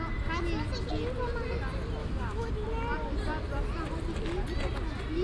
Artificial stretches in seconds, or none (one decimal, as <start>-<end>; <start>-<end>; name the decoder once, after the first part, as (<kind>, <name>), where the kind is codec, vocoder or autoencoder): 2.0-2.5 (autoencoder, DAC-VAE)